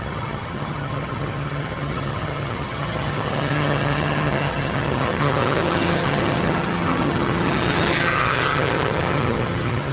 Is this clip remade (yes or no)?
yes